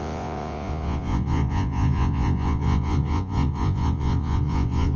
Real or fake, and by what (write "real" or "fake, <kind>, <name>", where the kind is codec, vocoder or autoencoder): fake, vocoder, Vocos